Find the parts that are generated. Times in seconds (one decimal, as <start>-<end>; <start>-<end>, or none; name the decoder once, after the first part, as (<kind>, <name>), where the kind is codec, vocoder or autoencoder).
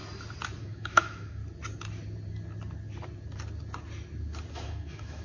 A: 0.6-1.4 (autoencoder, DAC-VAE); 4.5-5.2